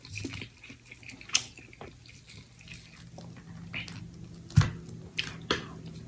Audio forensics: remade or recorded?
recorded